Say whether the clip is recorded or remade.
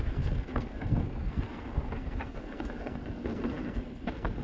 remade